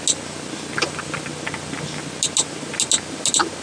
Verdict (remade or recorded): recorded